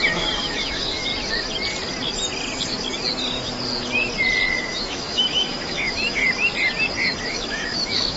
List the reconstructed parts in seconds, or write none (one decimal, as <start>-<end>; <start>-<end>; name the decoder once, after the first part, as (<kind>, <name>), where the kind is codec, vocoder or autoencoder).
0.0-1.1 (autoencoder, DAC-VAE); 4.6-6.2; 7.3-8.2